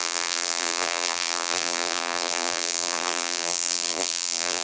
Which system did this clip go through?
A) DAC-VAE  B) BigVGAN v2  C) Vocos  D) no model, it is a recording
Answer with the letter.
B